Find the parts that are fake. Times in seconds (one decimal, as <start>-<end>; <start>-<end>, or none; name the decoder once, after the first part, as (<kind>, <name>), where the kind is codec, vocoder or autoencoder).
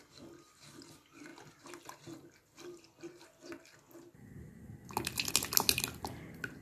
none